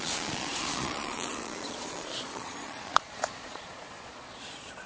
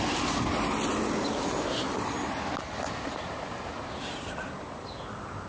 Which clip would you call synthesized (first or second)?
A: first